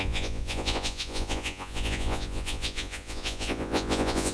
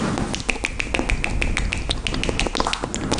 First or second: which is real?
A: second